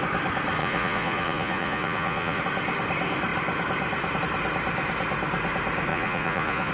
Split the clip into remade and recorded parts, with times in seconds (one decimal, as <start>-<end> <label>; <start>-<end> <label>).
0.0-0.6 recorded; 0.6-2.4 remade; 2.4-5.9 recorded; 5.9-6.7 remade